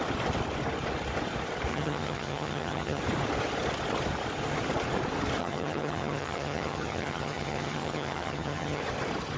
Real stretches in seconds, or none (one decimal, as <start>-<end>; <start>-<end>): 0.0-1.7; 3.0-5.4; 8.8-9.4